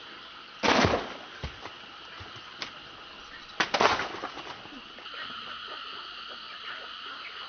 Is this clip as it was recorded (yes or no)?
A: yes